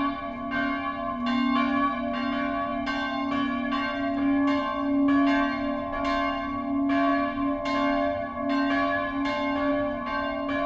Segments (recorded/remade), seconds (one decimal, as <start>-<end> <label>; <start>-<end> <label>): 0.0-10.7 recorded